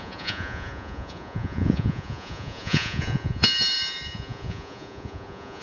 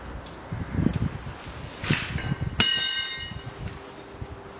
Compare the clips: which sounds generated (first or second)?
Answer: first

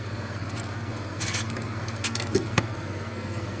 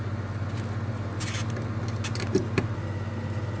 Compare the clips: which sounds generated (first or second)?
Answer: first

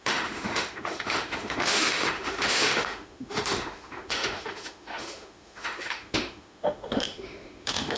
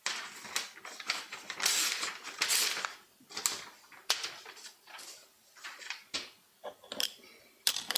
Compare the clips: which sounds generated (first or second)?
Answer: first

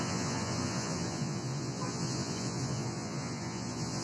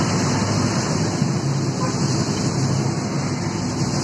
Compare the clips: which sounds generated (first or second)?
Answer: first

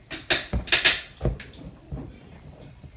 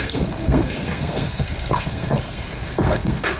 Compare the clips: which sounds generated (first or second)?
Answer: second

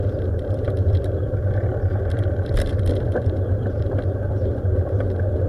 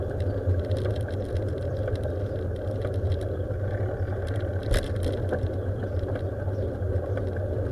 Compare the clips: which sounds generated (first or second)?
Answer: first